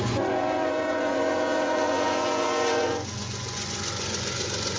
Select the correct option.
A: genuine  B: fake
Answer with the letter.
B